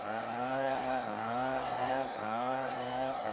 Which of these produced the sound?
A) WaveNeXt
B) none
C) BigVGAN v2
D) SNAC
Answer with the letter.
D